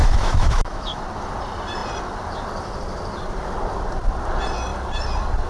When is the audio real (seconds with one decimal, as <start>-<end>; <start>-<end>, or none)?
1.0-5.5